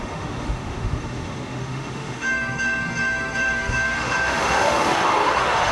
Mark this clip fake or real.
fake